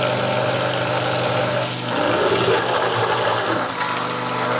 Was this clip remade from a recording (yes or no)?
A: no